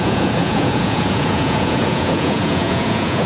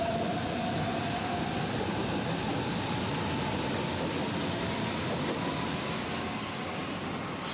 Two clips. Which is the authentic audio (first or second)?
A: second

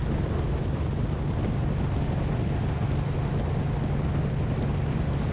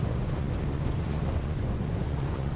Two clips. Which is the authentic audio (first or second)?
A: first